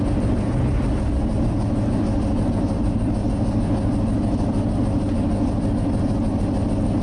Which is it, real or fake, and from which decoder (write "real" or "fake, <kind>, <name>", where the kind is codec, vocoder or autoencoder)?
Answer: real